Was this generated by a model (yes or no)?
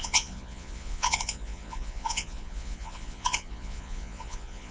yes